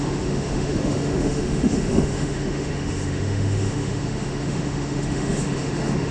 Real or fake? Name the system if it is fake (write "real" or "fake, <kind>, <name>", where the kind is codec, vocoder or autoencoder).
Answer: fake, autoencoder, DAC-VAE